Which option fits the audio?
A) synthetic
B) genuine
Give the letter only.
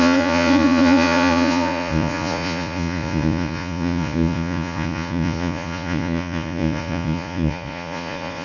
A